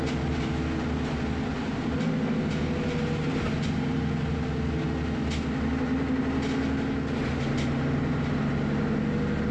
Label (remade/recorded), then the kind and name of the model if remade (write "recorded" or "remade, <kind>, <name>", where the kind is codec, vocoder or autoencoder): recorded